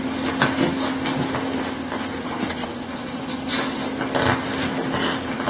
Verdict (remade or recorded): recorded